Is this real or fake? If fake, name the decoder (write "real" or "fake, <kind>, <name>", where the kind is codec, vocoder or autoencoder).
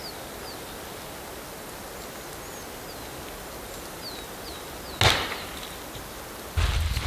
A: real